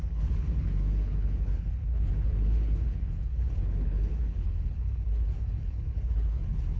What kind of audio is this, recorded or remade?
remade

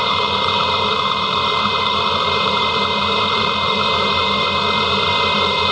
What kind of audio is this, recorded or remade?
remade